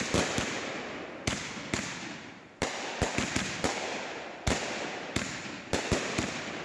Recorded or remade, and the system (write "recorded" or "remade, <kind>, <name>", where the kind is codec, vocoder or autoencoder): remade, vocoder, BigVGAN v2